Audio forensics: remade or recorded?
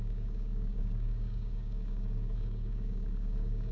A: remade